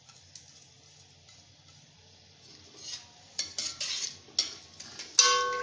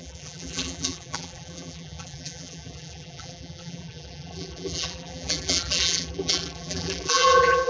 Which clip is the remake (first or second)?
second